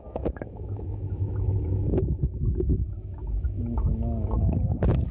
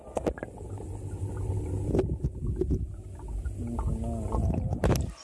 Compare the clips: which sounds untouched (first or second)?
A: second